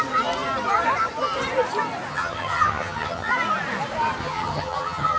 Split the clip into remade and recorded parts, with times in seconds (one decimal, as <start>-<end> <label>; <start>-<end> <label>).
0.0-2.1 recorded; 2.1-3.3 remade; 3.3-4.2 recorded; 4.2-5.2 remade